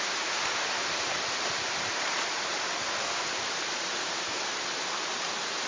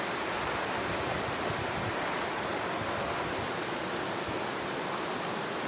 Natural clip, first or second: second